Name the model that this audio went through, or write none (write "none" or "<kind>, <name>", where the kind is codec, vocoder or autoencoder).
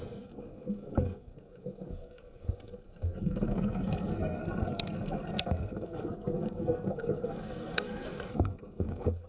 codec, SNAC